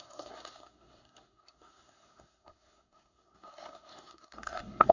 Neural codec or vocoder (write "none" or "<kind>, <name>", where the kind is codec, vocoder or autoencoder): codec, SNAC